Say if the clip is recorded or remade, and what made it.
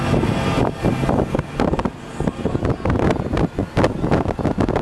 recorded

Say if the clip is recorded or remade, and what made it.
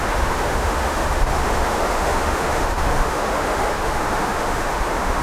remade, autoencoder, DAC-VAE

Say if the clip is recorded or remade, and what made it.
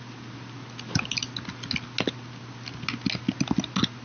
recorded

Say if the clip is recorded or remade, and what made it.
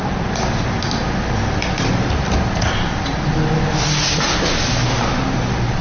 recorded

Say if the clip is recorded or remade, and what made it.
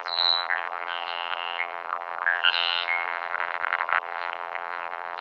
remade, vocoder, BigVGAN v2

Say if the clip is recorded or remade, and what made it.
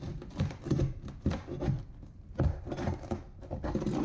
recorded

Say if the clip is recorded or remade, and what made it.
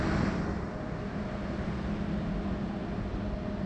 recorded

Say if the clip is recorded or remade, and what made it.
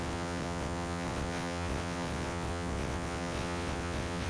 remade, vocoder, WaveNeXt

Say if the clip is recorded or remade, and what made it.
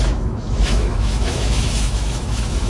remade, autoencoder, DAC-VAE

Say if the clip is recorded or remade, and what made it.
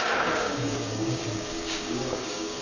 remade, codec, DAC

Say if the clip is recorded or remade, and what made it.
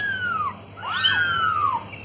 recorded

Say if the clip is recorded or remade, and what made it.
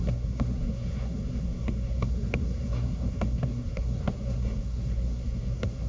remade, codec, SNAC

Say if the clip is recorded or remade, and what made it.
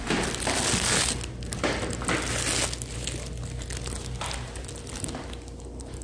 recorded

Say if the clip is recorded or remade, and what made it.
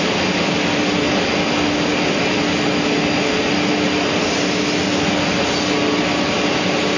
recorded